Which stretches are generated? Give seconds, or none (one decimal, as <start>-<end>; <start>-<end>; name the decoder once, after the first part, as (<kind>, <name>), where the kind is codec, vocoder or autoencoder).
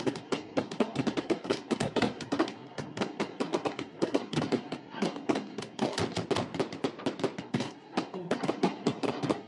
0.0-6.0 (codec, SNAC); 7.4-9.5